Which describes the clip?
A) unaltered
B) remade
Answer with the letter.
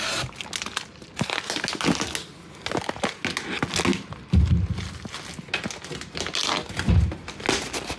A